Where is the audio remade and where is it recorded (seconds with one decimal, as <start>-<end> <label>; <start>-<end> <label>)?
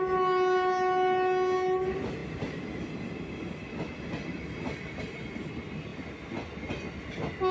0.0-7.5 recorded